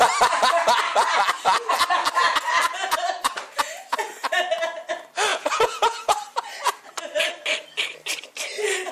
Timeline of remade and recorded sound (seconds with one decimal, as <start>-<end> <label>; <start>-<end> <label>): 0.0-5.3 recorded; 5.3-6.1 remade; 6.1-8.9 recorded